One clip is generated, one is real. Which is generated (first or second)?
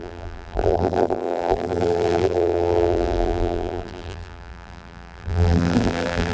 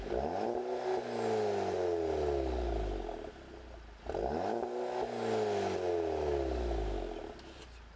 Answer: first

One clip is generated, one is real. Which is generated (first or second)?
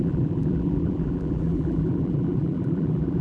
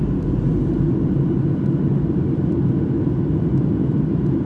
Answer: first